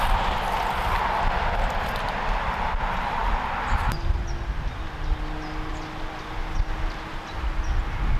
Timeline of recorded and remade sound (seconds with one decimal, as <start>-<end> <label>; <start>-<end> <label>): 0.0-8.2 recorded